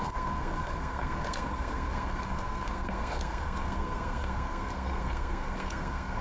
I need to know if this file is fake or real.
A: fake